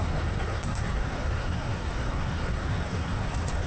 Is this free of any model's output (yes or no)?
no